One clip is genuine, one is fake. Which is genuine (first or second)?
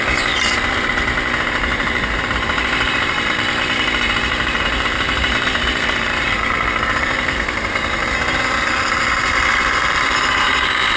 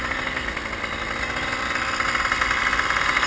second